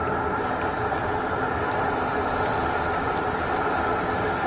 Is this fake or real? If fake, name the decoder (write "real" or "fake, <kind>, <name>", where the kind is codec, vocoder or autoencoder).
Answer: real